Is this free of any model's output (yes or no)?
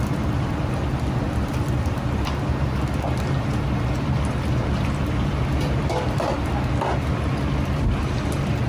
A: yes